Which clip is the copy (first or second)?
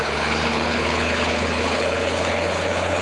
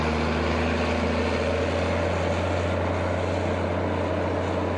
first